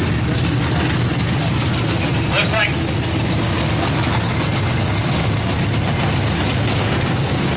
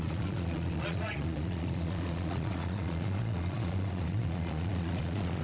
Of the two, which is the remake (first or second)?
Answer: second